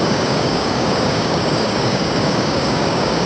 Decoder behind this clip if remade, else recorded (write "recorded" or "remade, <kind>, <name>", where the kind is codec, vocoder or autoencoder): remade, codec, DAC